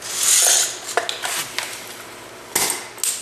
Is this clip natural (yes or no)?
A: yes